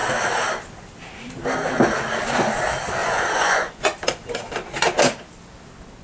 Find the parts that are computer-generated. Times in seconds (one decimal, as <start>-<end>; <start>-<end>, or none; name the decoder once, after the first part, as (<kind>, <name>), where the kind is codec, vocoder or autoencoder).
3.0-3.8 (vocoder, Vocos)